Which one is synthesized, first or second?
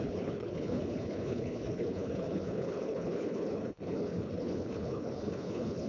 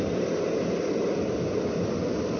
first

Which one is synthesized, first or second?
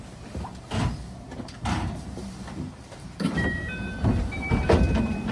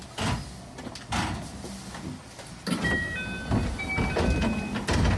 first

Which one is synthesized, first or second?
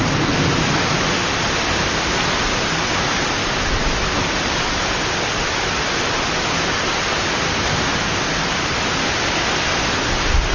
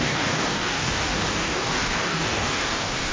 second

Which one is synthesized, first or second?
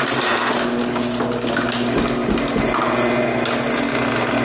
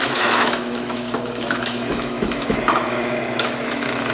second